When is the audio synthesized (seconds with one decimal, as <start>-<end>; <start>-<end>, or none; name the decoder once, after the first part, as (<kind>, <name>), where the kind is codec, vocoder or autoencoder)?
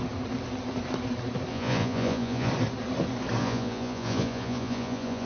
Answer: 1.5-2.5 (vocoder, Vocos); 3.4-5.3